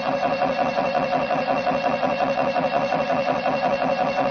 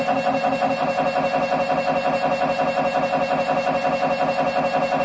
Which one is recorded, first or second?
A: second